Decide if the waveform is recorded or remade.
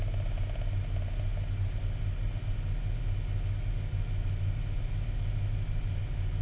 recorded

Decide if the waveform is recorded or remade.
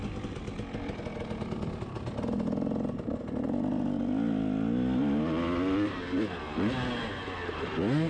recorded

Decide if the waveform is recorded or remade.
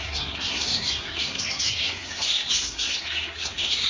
remade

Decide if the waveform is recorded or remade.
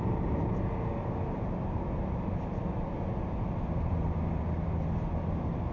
recorded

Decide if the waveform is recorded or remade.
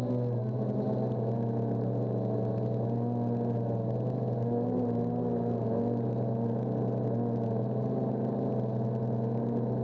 recorded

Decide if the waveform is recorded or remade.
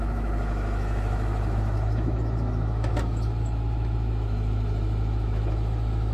remade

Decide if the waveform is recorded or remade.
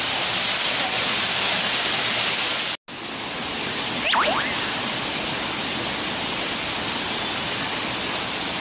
recorded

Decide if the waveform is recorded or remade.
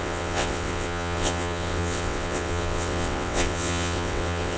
remade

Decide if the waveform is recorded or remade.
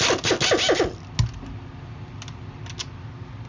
recorded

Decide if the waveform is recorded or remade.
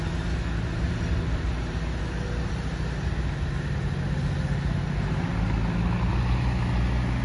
recorded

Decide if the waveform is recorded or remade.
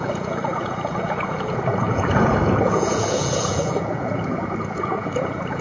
remade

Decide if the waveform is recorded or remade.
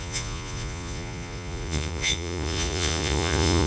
remade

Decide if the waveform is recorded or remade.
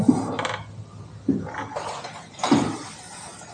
recorded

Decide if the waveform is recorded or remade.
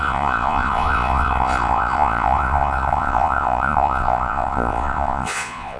remade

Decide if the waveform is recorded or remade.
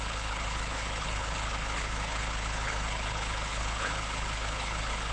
remade